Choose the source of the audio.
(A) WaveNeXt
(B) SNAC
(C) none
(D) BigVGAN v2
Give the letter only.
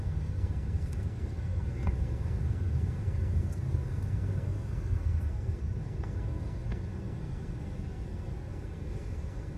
B